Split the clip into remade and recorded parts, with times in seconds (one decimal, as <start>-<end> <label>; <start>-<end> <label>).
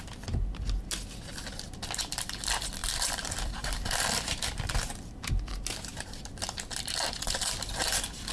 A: 0.0-2.8 recorded; 2.8-5.3 remade; 5.3-5.9 recorded; 5.9-7.3 remade; 7.3-8.3 recorded